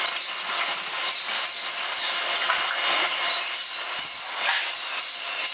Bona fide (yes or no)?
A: yes